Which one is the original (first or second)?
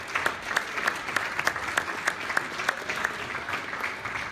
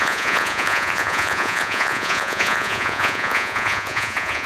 first